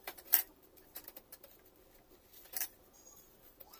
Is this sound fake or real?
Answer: fake